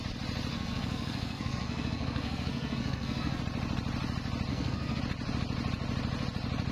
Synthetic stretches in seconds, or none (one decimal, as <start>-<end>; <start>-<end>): 0.5-3.4; 4.5-5.0